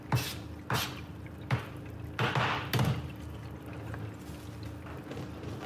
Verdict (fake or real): real